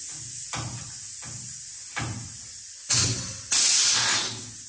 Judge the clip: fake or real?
real